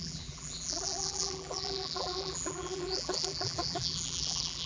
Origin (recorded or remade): remade